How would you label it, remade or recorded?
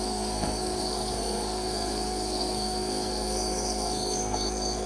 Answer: remade